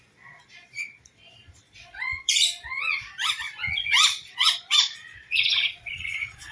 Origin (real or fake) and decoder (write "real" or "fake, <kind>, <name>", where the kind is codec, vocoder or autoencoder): fake, vocoder, Vocos